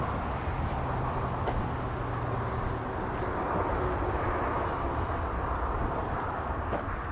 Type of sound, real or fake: real